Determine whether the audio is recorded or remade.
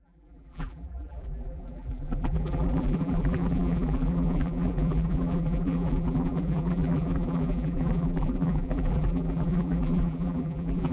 remade